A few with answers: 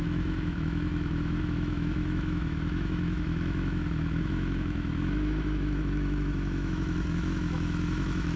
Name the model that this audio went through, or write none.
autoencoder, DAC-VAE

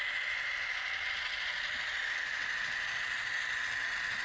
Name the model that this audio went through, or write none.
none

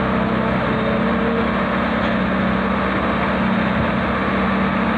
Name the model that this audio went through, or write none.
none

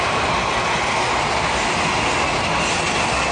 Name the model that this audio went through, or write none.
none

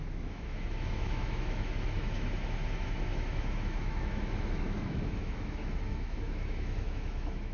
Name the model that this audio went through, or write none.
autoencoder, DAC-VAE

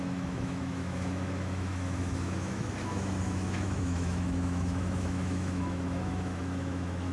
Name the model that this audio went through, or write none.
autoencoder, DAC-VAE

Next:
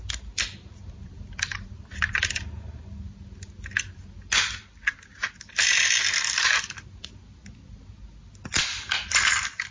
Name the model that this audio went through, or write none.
none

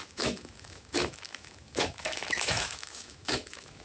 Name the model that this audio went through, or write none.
autoencoder, DAC-VAE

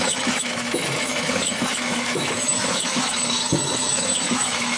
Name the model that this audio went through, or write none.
autoencoder, DAC-VAE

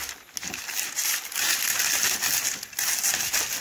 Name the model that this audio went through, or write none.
none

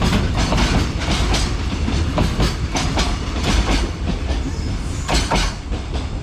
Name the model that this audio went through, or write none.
none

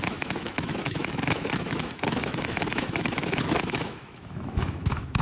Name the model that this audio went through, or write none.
autoencoder, DAC-VAE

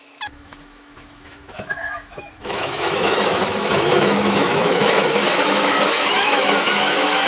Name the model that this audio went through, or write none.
autoencoder, DAC-VAE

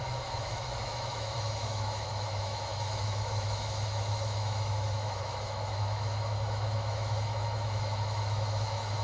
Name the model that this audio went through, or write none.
autoencoder, DAC-VAE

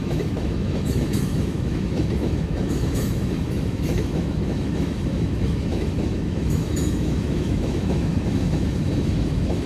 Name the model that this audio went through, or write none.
autoencoder, DAC-VAE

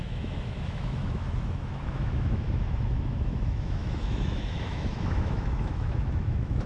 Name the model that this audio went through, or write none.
autoencoder, DAC-VAE